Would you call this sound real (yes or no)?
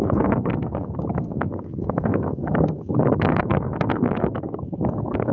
no